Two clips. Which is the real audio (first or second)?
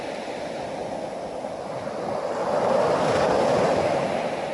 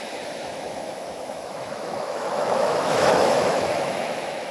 first